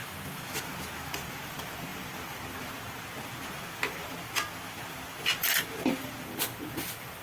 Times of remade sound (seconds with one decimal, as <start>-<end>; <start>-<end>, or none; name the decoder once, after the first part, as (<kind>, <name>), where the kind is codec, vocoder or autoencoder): 0.0-0.6 (autoencoder, DAC-VAE)